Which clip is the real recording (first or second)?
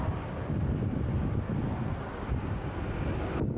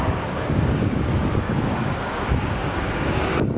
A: first